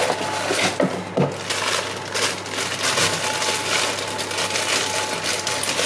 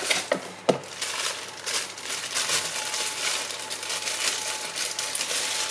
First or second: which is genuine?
first